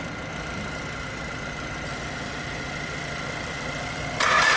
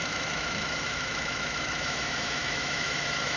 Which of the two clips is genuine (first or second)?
first